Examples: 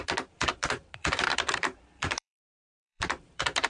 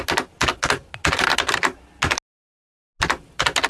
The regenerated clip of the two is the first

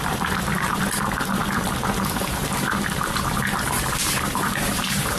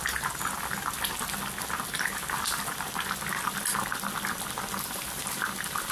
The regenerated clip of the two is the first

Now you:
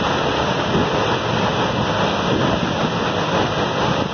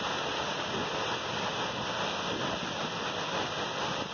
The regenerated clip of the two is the second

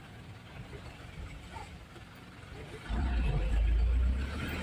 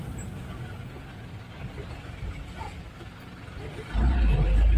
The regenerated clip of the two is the first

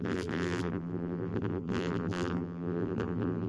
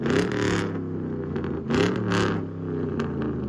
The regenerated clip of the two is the first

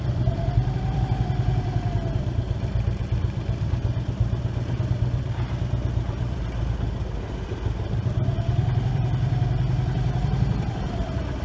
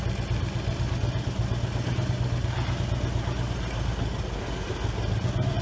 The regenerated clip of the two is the first